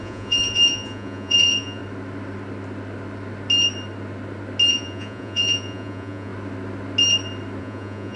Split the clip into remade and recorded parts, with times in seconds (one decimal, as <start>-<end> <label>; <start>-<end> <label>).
0.0-1.8 remade; 1.8-4.7 recorded; 4.7-6.3 remade; 6.3-7.6 recorded; 7.6-8.2 remade